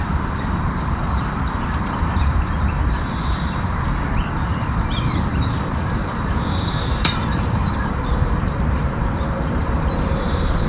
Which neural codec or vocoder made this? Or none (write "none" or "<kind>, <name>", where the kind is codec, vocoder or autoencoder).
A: vocoder, BigVGAN v2